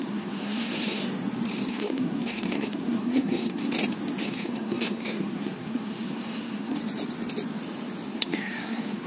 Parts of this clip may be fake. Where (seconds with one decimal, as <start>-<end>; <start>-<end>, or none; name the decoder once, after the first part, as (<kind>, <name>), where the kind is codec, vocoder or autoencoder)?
0.0-1.0 (codec, SNAC); 1.7-3.6; 4.2-6.8; 8.1-9.1